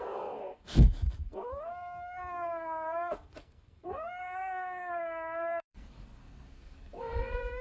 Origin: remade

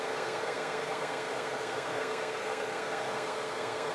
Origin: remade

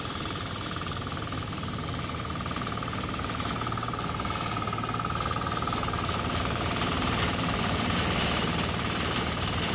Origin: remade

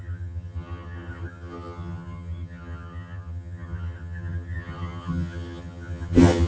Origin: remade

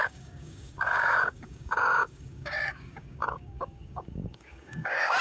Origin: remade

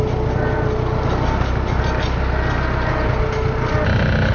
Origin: recorded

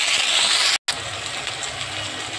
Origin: recorded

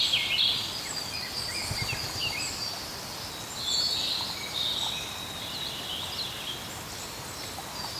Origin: recorded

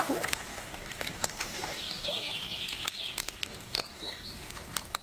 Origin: remade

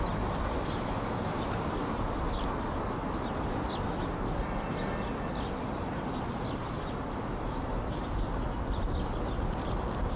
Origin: recorded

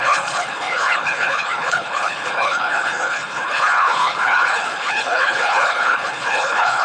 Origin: remade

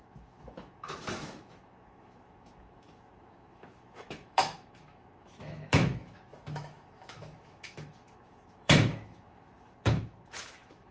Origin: remade